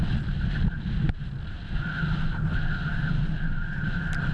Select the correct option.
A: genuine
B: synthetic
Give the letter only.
A